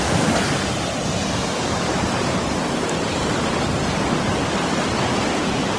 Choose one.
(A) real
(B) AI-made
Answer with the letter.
A